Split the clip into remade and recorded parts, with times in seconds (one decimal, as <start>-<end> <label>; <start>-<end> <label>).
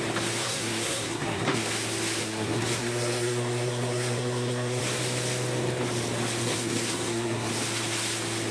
0.0-0.4 recorded; 0.4-1.7 remade; 1.7-2.2 recorded; 2.2-4.8 remade; 4.8-6.4 recorded; 6.4-7.5 remade; 7.5-8.5 recorded